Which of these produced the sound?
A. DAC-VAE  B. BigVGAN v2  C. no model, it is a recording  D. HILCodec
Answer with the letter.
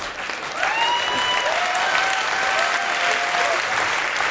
C